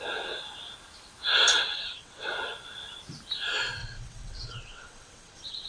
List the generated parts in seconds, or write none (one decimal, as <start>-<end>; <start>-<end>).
1.5-2.3; 3.8-5.7